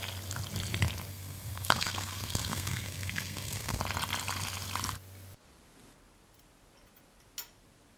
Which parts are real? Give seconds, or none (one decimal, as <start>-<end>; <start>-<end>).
0.0-1.1; 3.8-8.0